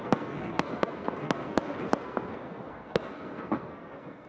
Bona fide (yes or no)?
no